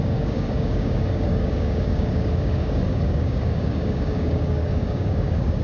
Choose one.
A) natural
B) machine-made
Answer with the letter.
B